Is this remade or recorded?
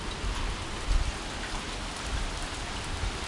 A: recorded